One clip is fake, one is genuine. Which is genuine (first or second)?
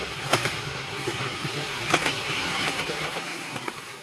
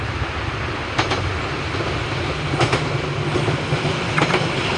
second